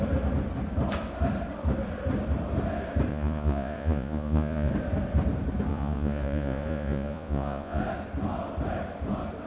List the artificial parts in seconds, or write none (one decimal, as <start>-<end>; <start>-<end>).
3.1-4.7; 5.7-7.8